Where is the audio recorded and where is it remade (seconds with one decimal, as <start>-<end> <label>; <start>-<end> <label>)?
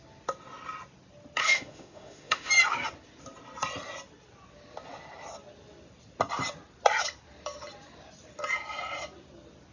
0.0-1.4 recorded; 1.4-2.5 remade; 2.5-9.7 recorded